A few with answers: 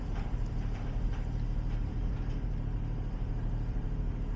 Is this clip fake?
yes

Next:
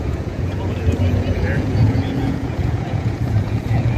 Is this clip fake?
yes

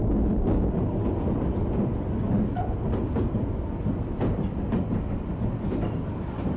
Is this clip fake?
no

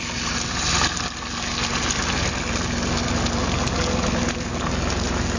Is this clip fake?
no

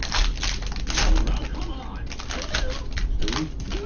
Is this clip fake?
no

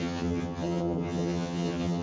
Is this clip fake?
yes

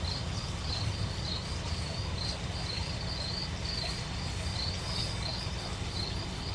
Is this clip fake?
no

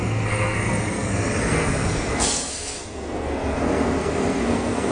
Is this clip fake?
yes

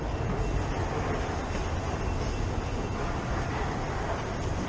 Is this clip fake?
no